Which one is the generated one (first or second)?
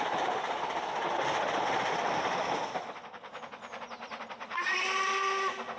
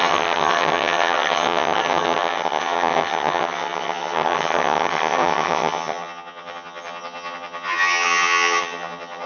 second